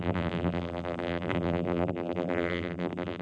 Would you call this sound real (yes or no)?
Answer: no